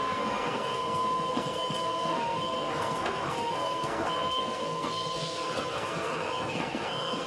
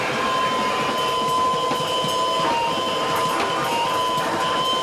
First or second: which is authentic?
second